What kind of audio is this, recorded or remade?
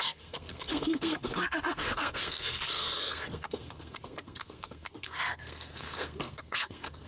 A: remade